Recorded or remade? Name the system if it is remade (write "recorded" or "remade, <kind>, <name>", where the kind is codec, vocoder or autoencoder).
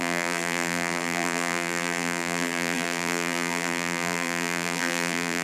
remade, vocoder, BigVGAN v2